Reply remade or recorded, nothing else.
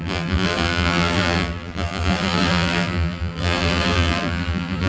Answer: remade